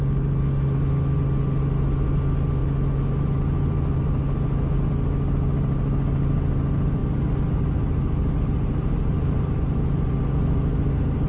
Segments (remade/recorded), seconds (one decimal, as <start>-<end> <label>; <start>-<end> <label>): 0.0-11.3 recorded